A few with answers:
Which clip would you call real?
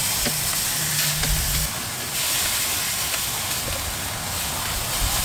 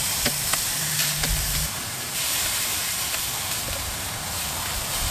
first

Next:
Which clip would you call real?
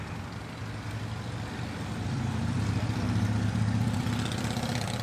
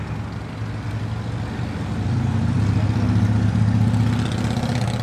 second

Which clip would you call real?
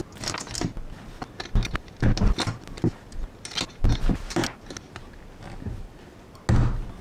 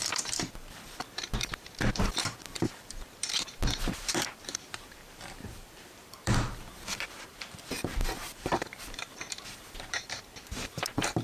first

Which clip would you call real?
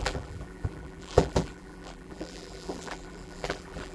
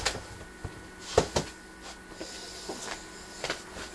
second